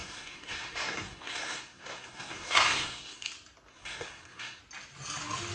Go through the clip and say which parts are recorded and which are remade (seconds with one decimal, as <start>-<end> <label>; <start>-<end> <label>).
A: 0.0-3.3 remade; 3.3-3.7 recorded; 3.7-4.6 remade; 4.6-5.5 recorded